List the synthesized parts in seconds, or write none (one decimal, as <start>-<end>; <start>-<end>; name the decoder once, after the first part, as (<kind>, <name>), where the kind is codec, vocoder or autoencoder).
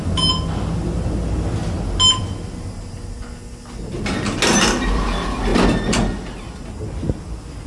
none